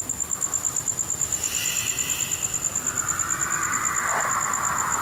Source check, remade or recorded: recorded